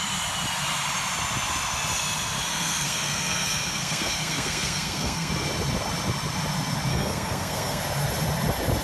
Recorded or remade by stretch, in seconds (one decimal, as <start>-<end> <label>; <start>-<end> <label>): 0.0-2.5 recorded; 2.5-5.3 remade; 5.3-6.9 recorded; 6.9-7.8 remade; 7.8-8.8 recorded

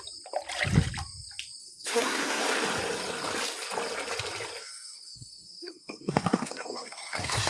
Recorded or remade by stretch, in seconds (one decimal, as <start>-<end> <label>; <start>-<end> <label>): 0.0-1.6 recorded; 1.6-2.4 remade; 2.4-4.6 recorded; 4.6-7.5 remade

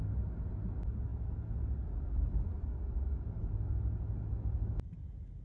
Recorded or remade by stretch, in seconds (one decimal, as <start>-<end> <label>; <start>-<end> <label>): 0.0-5.4 recorded

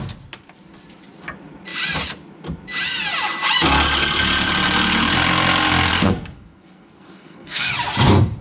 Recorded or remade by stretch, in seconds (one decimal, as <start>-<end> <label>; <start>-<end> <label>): 0.0-5.9 recorded; 5.9-7.7 remade; 7.7-8.4 recorded